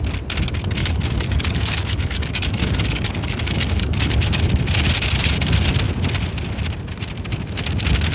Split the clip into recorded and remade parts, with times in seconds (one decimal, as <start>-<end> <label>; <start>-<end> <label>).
0.0-0.8 recorded; 0.8-4.4 remade; 4.4-8.1 recorded